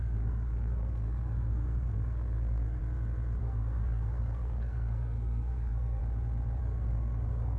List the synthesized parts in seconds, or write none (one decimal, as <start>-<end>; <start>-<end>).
0.0-2.8; 3.4-6.0; 6.6-7.6